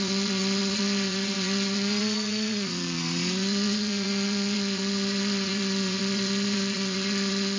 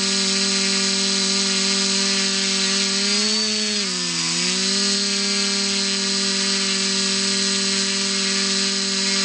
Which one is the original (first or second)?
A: second